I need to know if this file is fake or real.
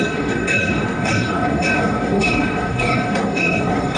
fake